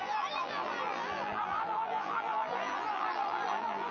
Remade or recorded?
remade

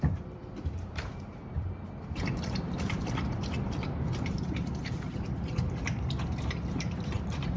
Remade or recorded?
remade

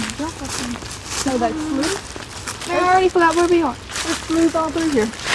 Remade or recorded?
recorded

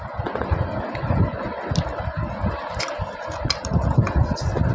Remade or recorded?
recorded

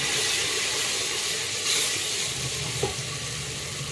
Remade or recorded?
recorded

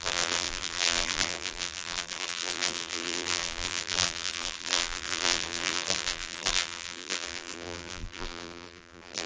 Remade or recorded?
remade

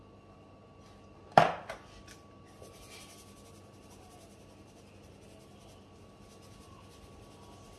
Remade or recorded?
recorded